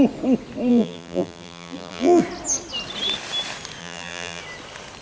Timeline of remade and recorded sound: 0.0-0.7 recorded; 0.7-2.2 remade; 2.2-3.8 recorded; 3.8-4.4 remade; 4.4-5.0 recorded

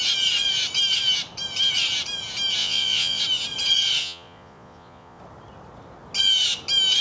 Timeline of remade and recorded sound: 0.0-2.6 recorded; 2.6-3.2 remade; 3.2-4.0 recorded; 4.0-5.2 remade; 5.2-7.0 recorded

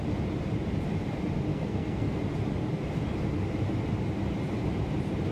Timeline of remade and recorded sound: 0.0-1.5 recorded; 1.5-2.2 remade; 2.2-5.3 recorded